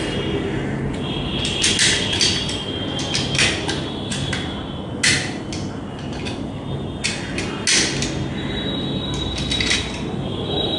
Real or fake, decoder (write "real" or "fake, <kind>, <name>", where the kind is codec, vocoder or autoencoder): real